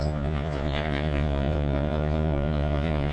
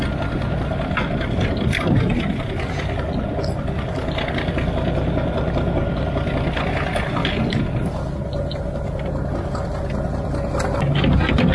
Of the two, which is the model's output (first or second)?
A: first